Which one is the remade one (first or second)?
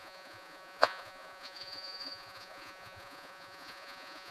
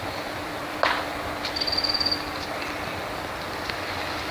first